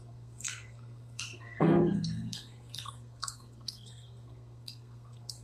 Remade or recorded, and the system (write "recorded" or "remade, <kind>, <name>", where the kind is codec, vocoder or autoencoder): remade, codec, SNAC